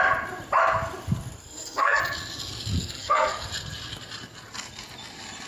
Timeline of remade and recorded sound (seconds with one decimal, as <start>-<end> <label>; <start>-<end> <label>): 0.0-1.4 recorded; 1.4-2.0 remade; 2.0-2.8 recorded; 2.8-3.5 remade; 3.5-5.5 recorded